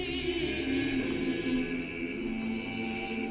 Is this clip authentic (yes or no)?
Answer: yes